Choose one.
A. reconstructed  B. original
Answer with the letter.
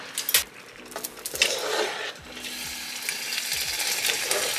B